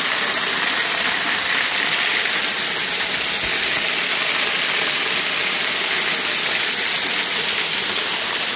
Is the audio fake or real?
real